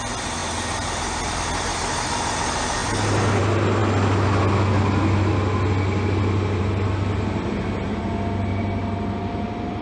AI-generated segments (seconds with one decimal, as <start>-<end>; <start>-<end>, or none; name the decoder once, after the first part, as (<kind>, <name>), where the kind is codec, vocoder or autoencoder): none